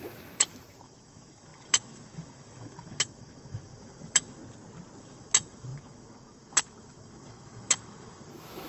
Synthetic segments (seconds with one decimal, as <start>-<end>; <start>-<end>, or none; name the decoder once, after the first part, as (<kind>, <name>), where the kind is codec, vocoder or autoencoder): 0.0-4.4 (autoencoder, DAC-VAE); 5.0-8.7